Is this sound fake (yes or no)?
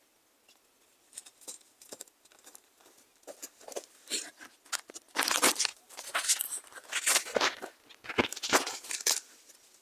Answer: no